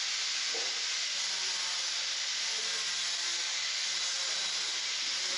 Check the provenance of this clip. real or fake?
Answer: real